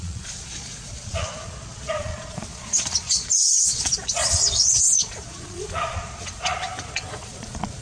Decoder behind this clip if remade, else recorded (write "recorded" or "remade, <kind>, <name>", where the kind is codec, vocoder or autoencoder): remade, vocoder, Vocos